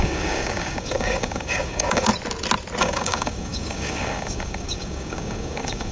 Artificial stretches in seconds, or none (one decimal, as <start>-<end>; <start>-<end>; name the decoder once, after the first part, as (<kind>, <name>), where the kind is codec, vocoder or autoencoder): 0.0-2.1 (codec, DAC); 2.8-5.9